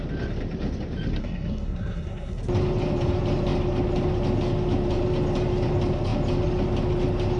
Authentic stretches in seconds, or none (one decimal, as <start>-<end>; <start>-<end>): 0.0-1.2; 2.4-7.4